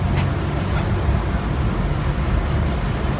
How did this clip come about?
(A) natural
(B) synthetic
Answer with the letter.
A